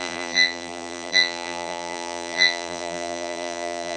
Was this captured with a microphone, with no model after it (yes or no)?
no